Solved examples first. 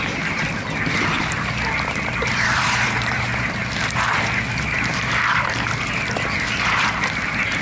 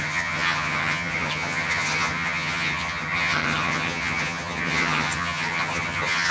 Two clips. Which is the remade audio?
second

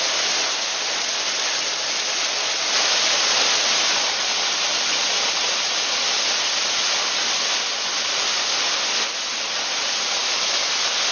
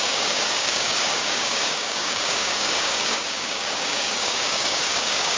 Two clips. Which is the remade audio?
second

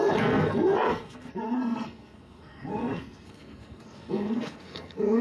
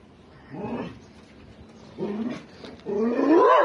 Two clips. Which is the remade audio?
first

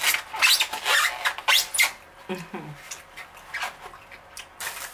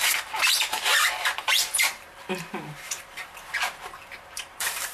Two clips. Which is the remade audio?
second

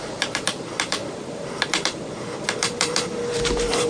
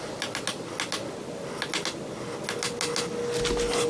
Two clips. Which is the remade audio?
first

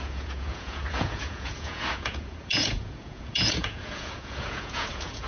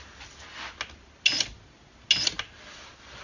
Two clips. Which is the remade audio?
first